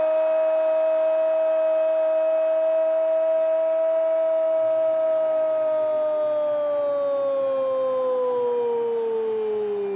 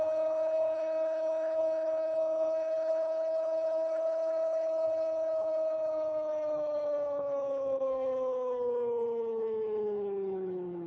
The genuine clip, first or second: first